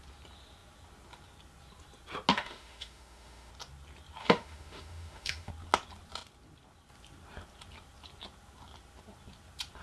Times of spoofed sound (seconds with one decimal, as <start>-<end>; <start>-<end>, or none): 2.3-3.5; 4.2-5.5